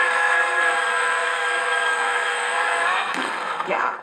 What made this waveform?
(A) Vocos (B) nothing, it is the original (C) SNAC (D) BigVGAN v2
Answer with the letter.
C